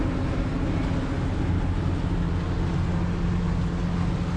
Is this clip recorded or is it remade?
recorded